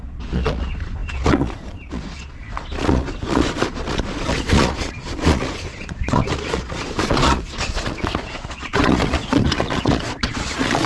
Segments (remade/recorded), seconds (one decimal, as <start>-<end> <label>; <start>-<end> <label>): 0.0-10.9 remade